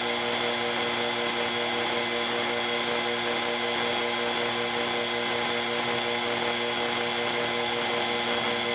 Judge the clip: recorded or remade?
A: recorded